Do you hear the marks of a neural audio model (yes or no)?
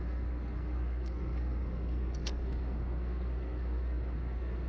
yes